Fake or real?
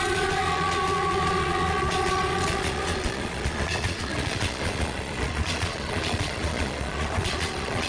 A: fake